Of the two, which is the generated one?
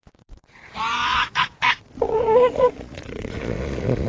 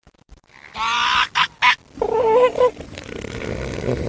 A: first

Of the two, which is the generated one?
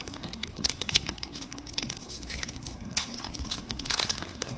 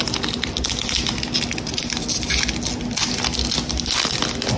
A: first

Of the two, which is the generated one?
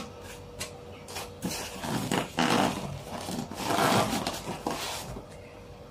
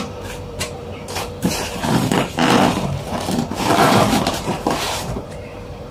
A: second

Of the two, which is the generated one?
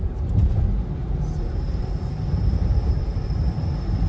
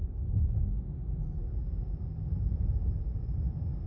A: first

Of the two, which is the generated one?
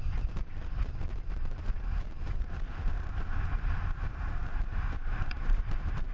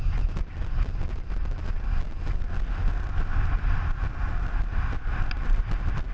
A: first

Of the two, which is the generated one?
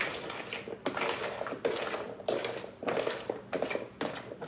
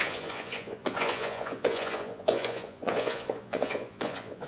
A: second